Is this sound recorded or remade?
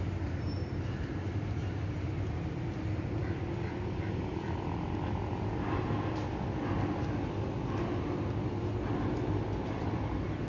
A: recorded